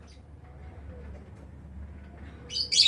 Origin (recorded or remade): recorded